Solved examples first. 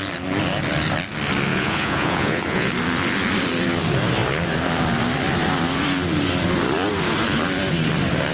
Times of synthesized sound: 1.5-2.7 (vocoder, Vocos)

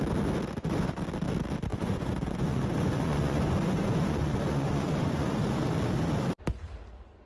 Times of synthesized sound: 1.7-5.4 (vocoder, Vocos)

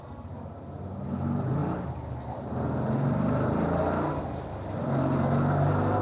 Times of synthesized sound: none

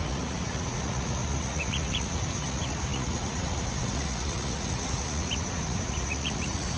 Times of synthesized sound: 0.0-6.8 (vocoder, Vocos)